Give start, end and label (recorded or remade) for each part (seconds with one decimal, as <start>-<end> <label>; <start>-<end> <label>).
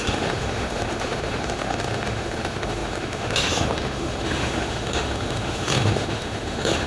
0.0-6.9 remade